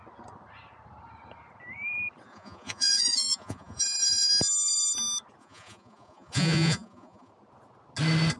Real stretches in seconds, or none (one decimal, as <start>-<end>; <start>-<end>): 0.0-2.3; 4.3-5.4; 7.3-8.4